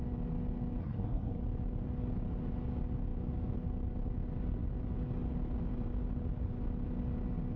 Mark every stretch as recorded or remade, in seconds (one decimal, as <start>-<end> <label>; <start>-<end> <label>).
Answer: 0.0-0.8 recorded; 0.8-1.4 remade; 1.4-7.6 recorded